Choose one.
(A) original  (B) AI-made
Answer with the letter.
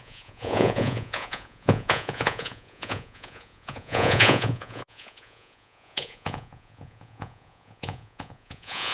B